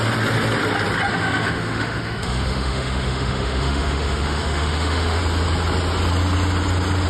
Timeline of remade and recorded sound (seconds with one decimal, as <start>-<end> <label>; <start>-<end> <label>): 0.0-1.1 recorded; 1.1-5.2 remade; 5.2-7.1 recorded